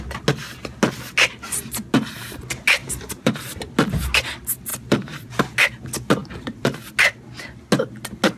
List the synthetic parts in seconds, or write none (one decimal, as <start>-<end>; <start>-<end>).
2.8-3.3; 4.7-5.3; 6.2-6.8